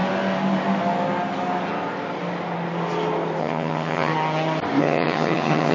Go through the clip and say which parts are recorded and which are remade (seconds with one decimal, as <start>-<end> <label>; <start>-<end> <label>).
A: 0.0-3.4 recorded; 3.4-4.1 remade; 4.1-4.8 recorded; 4.8-5.7 remade